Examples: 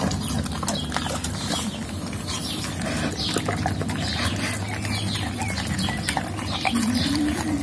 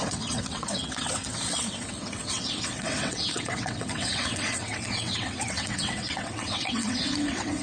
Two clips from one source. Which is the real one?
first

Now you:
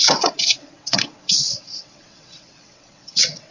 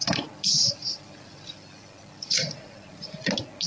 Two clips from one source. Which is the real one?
second